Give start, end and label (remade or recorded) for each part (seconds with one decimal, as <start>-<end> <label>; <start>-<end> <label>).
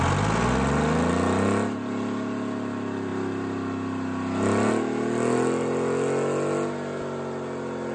0.0-7.9 recorded